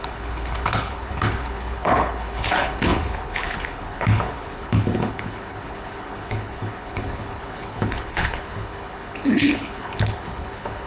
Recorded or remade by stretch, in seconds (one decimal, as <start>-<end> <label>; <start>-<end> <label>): 0.0-10.9 remade